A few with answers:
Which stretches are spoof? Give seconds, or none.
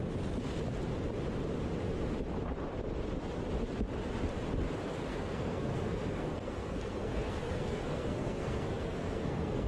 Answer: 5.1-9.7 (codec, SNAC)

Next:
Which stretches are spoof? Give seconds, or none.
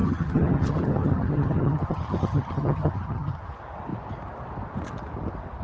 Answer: 0.0-3.4 (vocoder, HiFi-GAN)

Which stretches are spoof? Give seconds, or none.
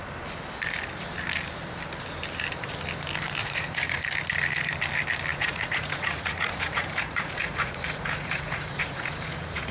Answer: 3.4-4.0 (vocoder, Vocos); 5.3-9.7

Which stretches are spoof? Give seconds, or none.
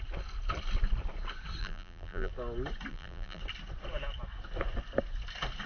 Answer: 1.6-2.3 (vocoder, BigVGAN v2); 2.9-3.4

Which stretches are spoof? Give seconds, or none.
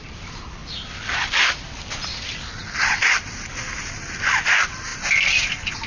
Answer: none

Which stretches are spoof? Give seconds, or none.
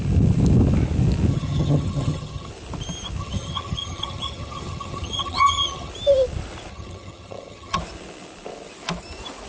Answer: 1.3-2.5 (vocoder, HiFi-GAN); 3.2-5.9; 6.7-7.8